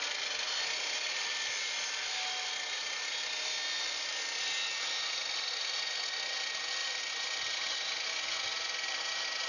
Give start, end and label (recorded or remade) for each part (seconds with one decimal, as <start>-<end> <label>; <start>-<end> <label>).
0.0-9.5 recorded